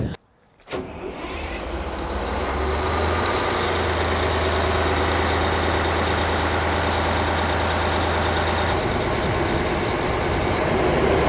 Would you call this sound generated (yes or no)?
no